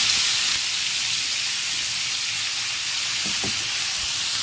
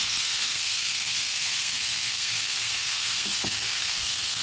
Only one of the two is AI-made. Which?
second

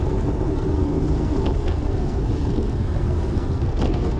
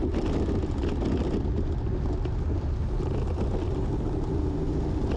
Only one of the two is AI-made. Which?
first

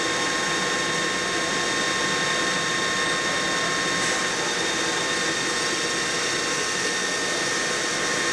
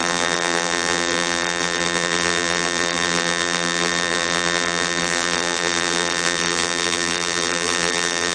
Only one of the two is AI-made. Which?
second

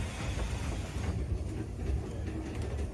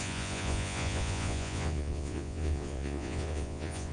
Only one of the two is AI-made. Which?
second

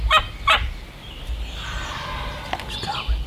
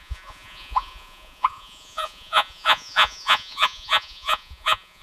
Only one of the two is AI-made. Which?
second